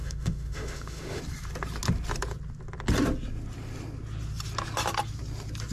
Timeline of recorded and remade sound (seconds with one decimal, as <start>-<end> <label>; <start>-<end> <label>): 0.0-1.2 remade; 1.2-5.7 recorded

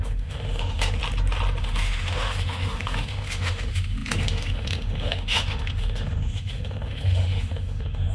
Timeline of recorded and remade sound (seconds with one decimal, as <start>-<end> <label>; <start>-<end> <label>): 0.0-1.0 remade; 1.0-1.6 recorded; 1.6-8.1 remade

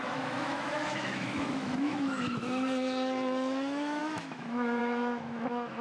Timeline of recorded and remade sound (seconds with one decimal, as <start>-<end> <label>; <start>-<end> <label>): 0.0-5.8 remade